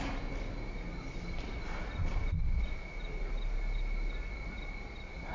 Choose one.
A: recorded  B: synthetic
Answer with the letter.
A